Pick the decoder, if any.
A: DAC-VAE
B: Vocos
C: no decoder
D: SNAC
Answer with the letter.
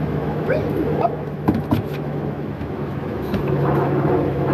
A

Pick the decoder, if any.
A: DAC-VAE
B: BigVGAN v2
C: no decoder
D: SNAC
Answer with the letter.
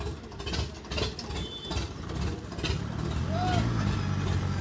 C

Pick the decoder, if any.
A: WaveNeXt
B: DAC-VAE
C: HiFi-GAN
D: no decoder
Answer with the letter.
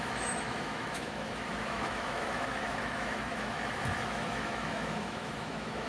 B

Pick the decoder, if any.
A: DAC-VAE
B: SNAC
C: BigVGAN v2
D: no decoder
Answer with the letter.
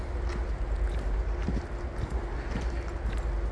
D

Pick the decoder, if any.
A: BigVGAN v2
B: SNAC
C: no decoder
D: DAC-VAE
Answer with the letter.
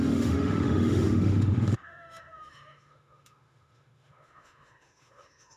D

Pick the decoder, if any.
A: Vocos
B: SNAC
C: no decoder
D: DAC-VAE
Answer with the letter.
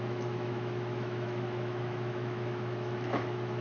D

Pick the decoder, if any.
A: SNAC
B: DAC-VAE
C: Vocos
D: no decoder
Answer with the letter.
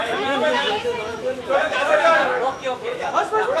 B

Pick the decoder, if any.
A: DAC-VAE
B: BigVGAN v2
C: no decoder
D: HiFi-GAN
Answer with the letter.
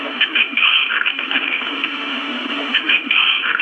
A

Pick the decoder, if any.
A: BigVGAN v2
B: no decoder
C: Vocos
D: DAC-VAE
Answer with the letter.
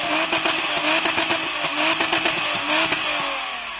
B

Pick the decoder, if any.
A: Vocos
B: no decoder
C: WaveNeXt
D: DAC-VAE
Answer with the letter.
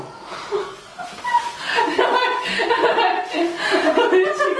B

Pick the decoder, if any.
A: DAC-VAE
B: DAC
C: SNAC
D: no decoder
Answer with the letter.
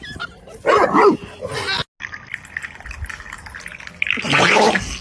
D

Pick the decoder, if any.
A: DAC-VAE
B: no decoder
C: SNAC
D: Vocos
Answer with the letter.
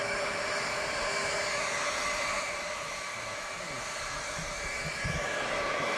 A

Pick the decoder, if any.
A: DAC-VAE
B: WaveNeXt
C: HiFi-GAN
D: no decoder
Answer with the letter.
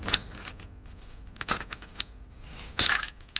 D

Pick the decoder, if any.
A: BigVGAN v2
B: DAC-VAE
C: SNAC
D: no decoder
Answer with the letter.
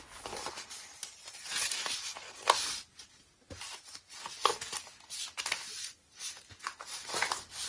D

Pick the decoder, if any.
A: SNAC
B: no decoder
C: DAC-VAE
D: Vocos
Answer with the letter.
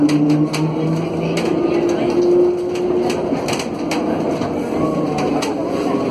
B